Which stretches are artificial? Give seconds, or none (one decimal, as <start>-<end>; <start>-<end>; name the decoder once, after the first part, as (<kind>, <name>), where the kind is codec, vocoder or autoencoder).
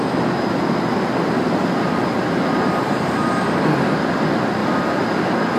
none